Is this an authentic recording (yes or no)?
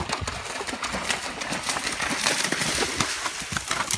yes